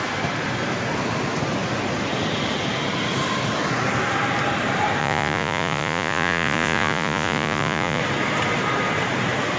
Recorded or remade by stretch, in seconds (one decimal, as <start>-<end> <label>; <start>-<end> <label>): 0.0-5.0 recorded; 5.0-8.0 remade; 8.0-9.6 recorded